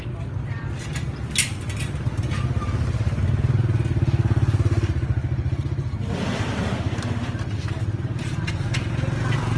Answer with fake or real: real